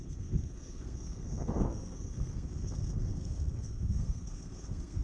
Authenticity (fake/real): fake